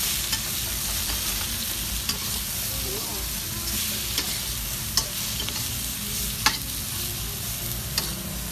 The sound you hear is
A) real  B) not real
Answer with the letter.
A